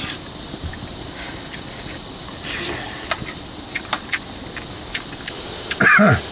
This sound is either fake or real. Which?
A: real